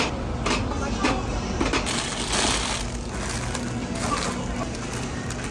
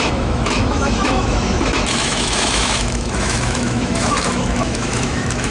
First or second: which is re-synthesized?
second